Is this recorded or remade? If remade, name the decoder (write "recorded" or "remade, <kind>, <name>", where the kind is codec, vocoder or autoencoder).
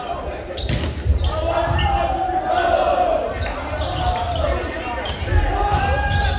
recorded